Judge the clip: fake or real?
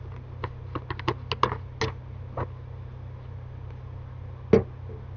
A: real